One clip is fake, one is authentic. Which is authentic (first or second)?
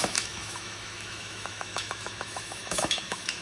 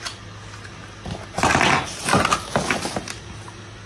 second